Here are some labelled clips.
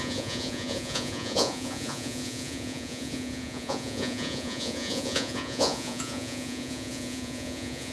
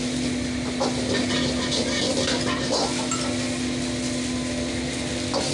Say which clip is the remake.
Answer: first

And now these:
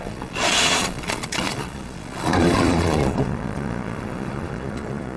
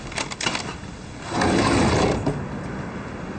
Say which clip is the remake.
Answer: first